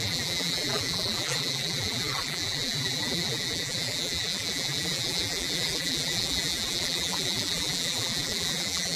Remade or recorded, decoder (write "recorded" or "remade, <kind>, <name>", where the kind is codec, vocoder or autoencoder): remade, vocoder, BigVGAN v2